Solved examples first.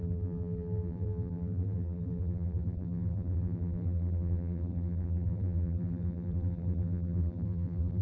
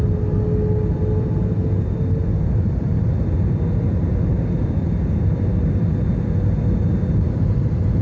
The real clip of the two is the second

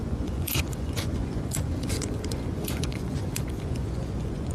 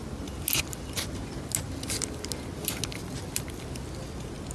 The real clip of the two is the second